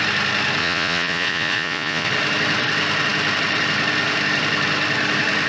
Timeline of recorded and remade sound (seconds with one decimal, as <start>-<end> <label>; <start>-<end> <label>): 0.0-0.6 recorded; 0.6-2.1 remade; 2.1-5.5 recorded